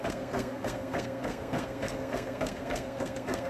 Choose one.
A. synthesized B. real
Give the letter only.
A